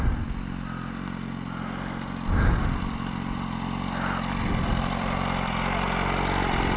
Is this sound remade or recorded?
recorded